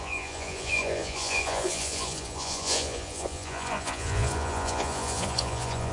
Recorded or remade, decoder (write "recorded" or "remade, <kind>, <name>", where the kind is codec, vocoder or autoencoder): remade, vocoder, Vocos